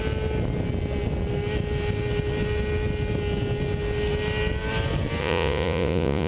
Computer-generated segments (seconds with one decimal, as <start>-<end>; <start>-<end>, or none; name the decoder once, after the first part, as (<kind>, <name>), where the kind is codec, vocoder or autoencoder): 5.2-6.3 (vocoder, Vocos)